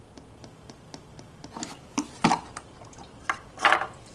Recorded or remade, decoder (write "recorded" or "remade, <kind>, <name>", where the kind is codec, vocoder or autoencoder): recorded